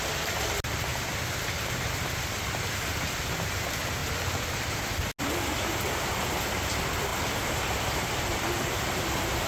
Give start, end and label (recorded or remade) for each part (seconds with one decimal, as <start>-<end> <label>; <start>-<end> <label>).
0.0-9.5 recorded